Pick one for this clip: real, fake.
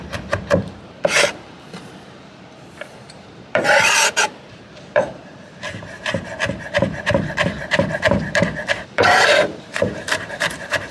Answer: fake